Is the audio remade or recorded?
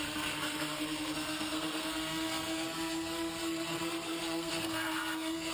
remade